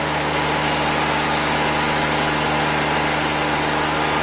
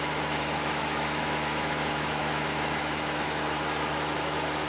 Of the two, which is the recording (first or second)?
first